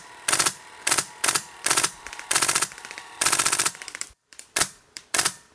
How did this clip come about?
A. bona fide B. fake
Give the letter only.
B